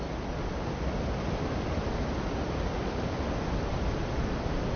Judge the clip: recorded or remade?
recorded